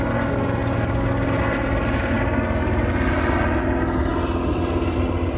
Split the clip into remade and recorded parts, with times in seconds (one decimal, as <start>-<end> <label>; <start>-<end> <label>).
0.0-5.4 recorded